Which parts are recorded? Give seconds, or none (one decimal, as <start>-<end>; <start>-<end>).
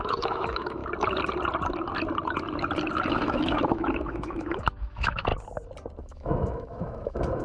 0.8-3.1; 5.3-6.0